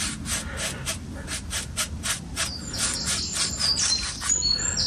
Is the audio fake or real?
real